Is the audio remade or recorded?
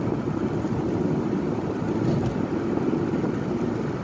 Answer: recorded